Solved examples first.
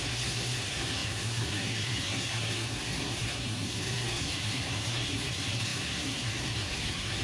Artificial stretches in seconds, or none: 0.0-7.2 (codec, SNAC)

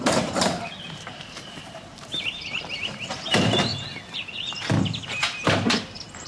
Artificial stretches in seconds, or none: 0.0-3.7 (vocoder, BigVGAN v2); 5.0-6.3

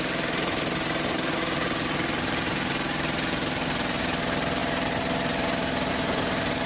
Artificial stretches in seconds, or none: 0.0-6.7 (vocoder, BigVGAN v2)